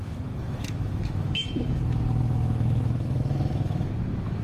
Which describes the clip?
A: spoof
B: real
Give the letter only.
A